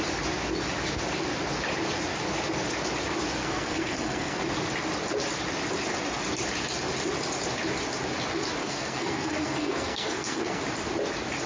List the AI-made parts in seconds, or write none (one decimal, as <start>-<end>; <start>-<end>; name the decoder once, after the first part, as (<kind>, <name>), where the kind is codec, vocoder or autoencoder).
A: 3.4-4.4 (codec, SNAC); 8.6-10.6